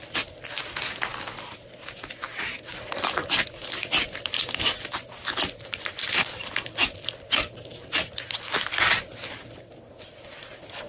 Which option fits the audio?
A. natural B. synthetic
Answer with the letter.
A